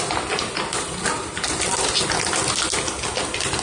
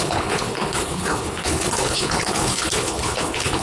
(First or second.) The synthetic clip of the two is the second